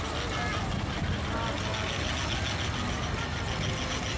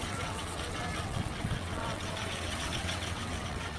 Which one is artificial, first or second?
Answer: second